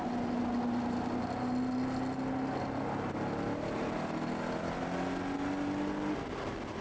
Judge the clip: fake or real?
real